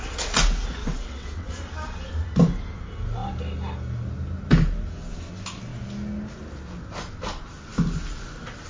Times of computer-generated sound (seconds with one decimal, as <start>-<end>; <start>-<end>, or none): 0.8-1.5